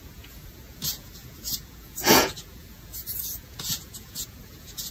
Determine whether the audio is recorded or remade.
remade